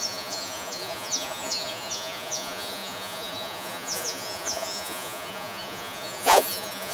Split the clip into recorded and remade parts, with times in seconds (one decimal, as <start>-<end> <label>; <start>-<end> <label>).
0.0-6.9 remade